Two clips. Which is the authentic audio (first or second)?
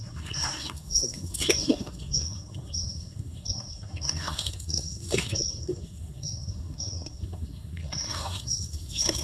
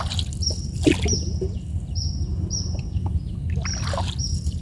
second